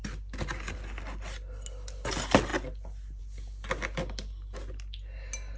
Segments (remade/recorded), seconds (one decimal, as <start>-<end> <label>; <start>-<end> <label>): 0.0-5.6 recorded